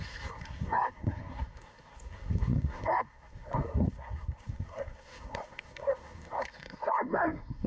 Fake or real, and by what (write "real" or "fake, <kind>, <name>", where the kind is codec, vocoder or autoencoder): fake, codec, SNAC